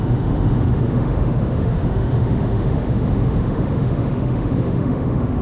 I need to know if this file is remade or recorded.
remade